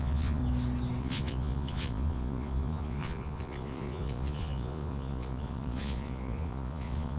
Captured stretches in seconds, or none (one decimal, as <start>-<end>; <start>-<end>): 0.4-1.0